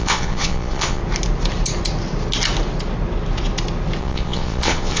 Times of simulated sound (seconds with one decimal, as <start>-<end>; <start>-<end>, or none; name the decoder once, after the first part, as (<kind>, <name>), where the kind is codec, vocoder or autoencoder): 0.0-1.0 (vocoder, Vocos); 4.0-5.0